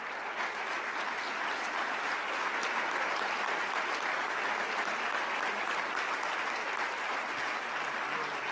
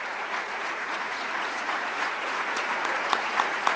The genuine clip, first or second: first